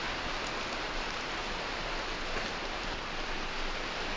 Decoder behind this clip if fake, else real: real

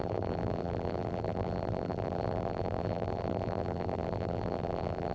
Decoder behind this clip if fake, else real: fake, vocoder, BigVGAN v2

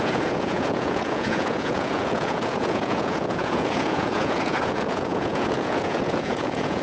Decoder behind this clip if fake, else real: fake, vocoder, Vocos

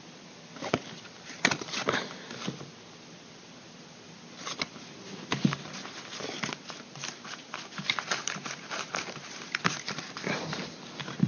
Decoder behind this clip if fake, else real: fake, vocoder, BigVGAN v2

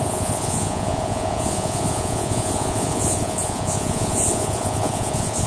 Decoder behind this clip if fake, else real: fake, vocoder, Vocos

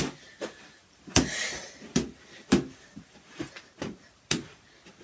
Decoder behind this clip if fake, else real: real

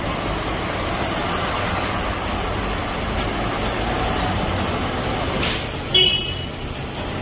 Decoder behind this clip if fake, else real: real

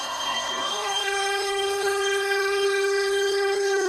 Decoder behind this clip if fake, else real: fake, codec, SNAC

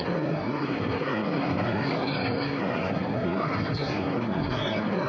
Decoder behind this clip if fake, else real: fake, codec, SNAC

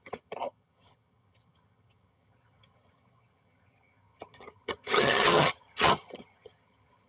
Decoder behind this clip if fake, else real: fake, vocoder, HiFi-GAN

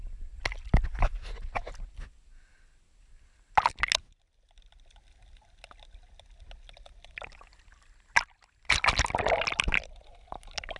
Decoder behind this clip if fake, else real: real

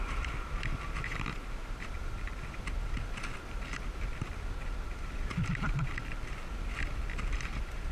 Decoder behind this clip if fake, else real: fake, vocoder, BigVGAN v2